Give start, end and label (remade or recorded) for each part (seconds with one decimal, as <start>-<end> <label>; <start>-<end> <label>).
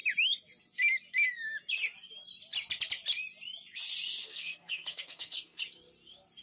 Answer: 0.0-4.2 recorded; 4.2-5.6 remade; 5.6-6.4 recorded